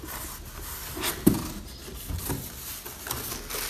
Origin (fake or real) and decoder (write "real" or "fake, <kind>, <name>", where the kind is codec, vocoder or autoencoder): real